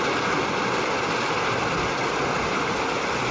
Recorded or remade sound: recorded